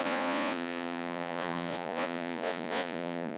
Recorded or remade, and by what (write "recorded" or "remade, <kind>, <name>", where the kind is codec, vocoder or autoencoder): remade, vocoder, Vocos